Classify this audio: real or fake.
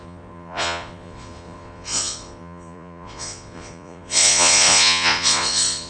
fake